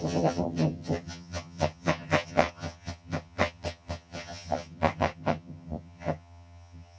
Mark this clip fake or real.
fake